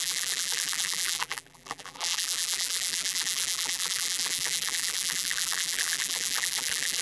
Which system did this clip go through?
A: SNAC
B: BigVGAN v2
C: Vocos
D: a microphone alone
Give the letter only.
B